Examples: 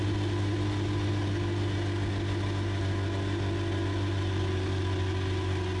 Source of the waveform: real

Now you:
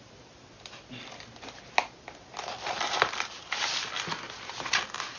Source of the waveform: real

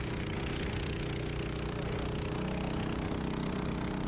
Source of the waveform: real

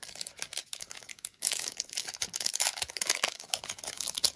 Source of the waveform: fake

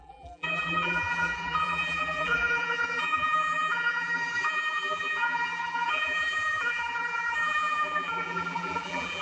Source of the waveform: fake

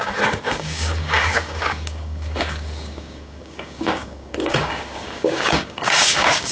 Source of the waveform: fake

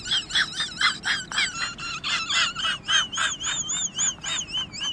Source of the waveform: real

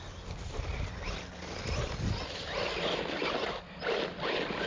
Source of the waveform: real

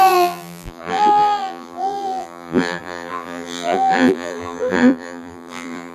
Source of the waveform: fake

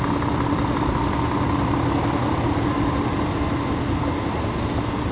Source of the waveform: real